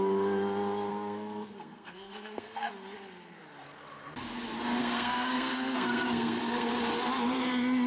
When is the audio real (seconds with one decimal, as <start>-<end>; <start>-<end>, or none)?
0.0-0.9; 2.7-4.8; 6.7-7.9